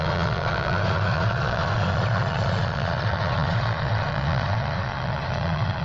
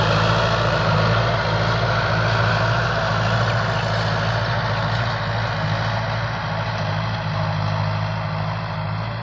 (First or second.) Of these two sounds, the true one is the second